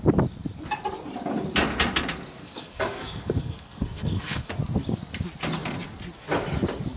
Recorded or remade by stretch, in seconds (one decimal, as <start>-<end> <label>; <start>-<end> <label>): 0.0-2.4 recorded; 2.4-4.5 remade; 4.5-7.0 recorded